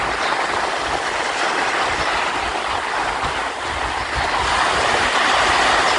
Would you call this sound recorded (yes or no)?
yes